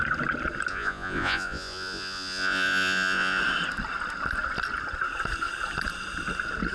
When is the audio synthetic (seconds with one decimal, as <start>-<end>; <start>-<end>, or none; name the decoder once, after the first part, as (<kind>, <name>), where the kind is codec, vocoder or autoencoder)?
0.7-3.4 (vocoder, Vocos)